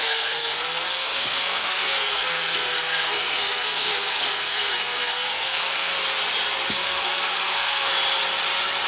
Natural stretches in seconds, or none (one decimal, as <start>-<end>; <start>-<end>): 5.9-6.7; 7.9-8.9